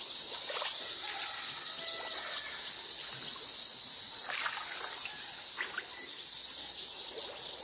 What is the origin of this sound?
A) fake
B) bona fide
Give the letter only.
B